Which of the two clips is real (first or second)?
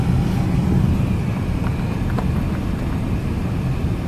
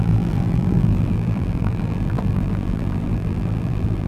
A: first